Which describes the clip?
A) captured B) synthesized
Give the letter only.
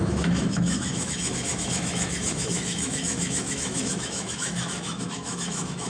B